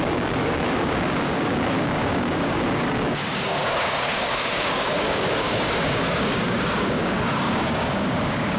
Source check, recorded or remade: remade